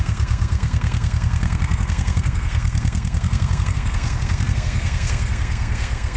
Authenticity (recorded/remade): remade